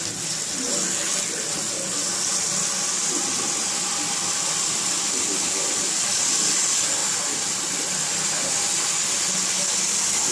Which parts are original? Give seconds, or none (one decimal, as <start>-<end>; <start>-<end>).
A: 0.0-4.2; 5.0-6.0; 6.6-7.0; 8.6-10.3